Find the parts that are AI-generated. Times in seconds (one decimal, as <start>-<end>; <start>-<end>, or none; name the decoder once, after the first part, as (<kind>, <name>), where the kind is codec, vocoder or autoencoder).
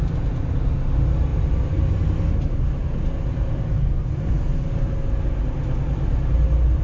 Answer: 1.3-2.3 (vocoder, BigVGAN v2)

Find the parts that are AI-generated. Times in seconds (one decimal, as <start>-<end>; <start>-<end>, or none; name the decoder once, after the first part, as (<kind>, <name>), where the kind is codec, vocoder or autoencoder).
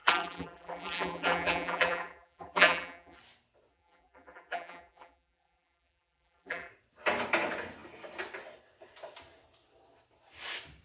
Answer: 0.0-3.2 (vocoder, BigVGAN v2); 3.7-6.7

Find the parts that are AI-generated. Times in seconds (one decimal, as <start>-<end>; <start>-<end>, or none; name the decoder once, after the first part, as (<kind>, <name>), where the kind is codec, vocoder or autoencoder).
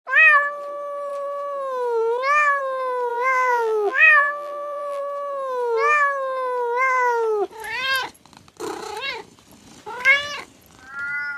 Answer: 3.1-5.0 (vocoder, BigVGAN v2)